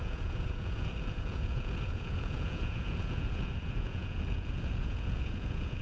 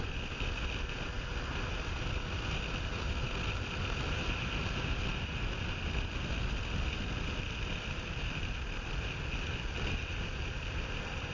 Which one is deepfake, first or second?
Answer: first